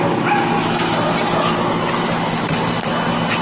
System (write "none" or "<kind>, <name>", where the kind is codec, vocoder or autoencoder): none